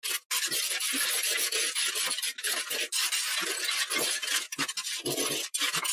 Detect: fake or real real